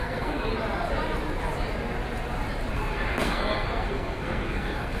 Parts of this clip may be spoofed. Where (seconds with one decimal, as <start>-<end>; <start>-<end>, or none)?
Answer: 0.0-0.5; 2.7-5.0